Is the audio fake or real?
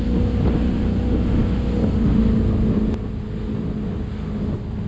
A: real